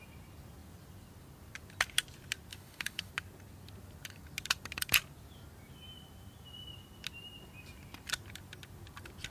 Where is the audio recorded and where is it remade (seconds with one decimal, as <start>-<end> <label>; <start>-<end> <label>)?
0.0-2.5 recorded; 2.5-3.1 remade; 3.1-9.3 recorded